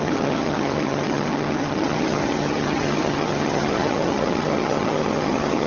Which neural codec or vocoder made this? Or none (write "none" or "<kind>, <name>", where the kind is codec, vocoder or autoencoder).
vocoder, HiFi-GAN